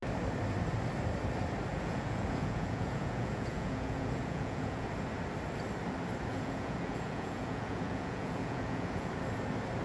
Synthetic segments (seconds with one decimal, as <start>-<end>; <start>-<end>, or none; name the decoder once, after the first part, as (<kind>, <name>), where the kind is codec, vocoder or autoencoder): 1.7-4.9 (vocoder, Vocos); 6.3-9.1